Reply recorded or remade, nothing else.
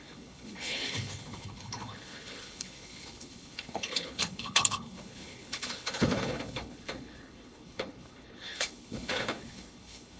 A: remade